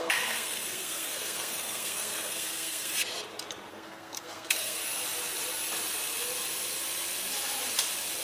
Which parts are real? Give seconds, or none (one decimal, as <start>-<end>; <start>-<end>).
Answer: 2.9-3.7; 4.8-8.2